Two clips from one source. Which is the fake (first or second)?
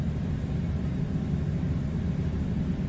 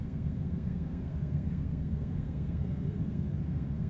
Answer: second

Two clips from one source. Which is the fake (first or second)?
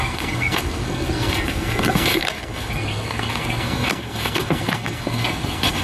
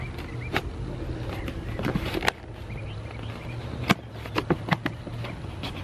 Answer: first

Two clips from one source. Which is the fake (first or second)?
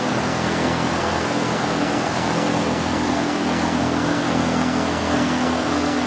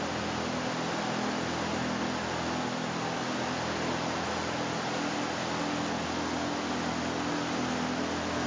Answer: first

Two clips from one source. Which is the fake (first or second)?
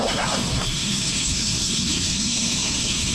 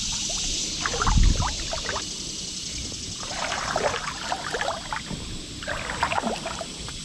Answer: first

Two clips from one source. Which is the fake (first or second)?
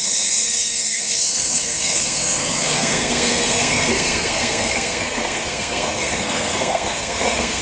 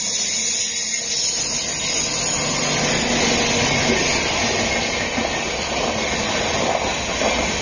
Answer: first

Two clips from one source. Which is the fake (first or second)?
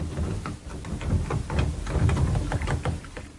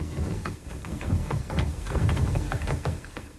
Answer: second